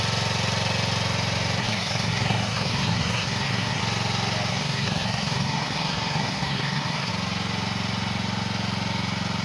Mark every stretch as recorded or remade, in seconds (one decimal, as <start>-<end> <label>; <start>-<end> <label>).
0.0-1.6 recorded; 1.6-3.8 remade; 3.8-4.5 recorded; 4.5-7.1 remade; 7.1-9.4 recorded